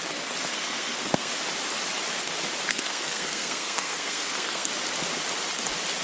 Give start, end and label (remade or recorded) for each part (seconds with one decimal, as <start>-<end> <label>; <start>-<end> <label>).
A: 0.0-0.5 recorded; 0.5-1.3 remade; 1.3-2.7 recorded; 2.7-4.7 remade; 4.7-6.0 recorded